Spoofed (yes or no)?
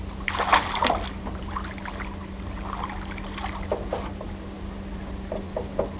no